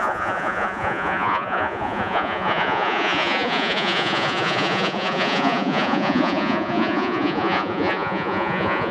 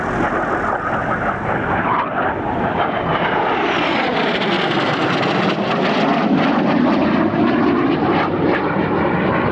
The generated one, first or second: first